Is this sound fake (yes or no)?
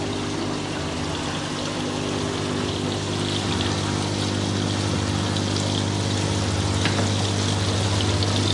no